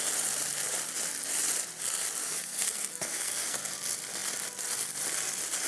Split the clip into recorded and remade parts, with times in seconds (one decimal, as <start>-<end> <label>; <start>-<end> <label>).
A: 0.0-2.2 recorded; 2.2-3.7 remade; 3.7-5.7 recorded